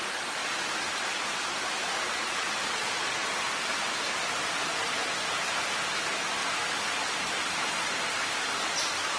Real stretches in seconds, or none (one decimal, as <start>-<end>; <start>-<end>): 0.0-2.6; 3.3-9.2